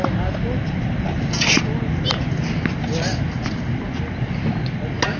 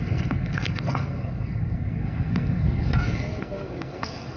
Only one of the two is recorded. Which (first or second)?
first